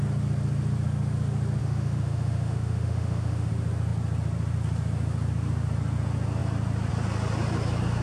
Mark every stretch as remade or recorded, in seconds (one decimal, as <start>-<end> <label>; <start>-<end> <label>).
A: 0.0-1.6 recorded; 1.6-3.5 remade; 3.5-8.0 recorded